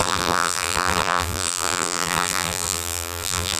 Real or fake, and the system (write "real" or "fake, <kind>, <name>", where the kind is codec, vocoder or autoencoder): fake, vocoder, BigVGAN v2